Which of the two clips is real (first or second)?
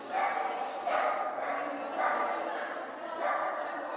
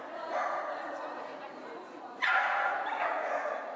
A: first